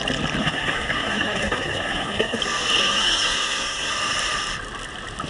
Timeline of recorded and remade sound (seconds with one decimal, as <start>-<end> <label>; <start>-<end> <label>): 0.0-0.4 recorded; 0.4-2.4 remade; 2.4-2.8 recorded; 2.8-3.9 remade; 3.9-5.3 recorded